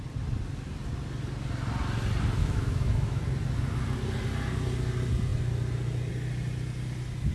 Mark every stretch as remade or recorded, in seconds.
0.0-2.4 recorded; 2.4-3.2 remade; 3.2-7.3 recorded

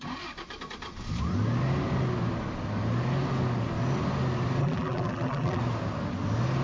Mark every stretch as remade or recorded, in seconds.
0.0-4.6 recorded; 4.6-5.6 remade; 5.6-6.6 recorded

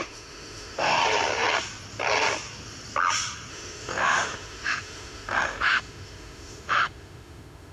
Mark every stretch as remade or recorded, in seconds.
0.0-1.0 remade; 1.0-3.5 recorded; 3.5-7.7 remade

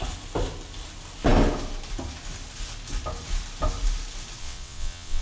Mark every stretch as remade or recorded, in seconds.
0.0-4.4 recorded; 4.4-5.2 remade

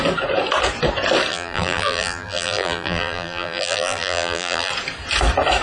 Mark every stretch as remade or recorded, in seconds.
0.0-1.3 recorded; 1.3-4.7 remade; 4.7-5.6 recorded